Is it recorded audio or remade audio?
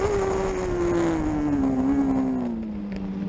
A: recorded